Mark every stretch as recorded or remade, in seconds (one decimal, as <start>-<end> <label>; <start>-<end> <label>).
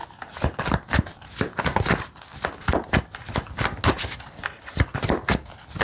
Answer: 0.0-5.8 recorded